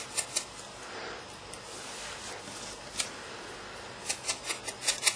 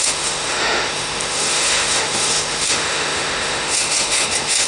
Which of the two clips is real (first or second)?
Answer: first